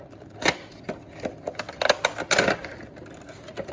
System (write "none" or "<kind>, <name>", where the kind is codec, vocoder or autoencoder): none